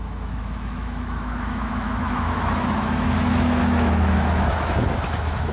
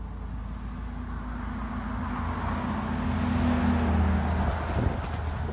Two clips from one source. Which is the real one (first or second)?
second